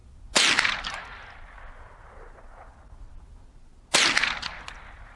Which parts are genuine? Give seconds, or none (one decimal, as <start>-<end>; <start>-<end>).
0.0-5.2